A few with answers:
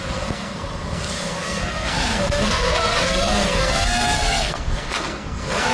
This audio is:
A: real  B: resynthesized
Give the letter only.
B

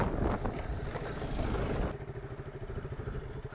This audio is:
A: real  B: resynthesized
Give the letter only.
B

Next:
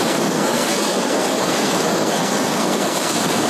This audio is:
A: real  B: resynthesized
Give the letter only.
B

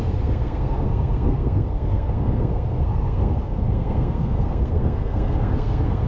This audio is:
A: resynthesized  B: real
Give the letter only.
A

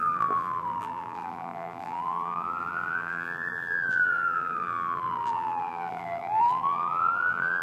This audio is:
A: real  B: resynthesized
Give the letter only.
B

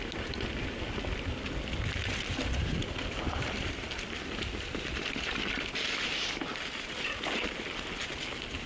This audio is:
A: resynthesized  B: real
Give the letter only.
B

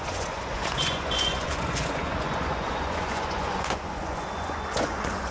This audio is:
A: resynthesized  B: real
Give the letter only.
A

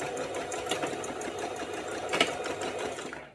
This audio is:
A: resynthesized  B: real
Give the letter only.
B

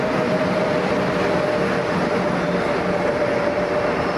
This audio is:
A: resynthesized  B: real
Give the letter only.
B